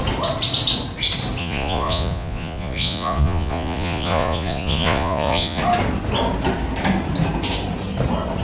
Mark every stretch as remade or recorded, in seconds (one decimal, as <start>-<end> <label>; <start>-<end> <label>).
0.0-1.4 recorded; 1.4-5.6 remade; 5.6-8.4 recorded